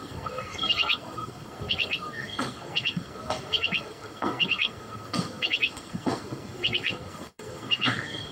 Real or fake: fake